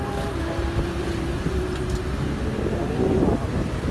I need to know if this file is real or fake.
real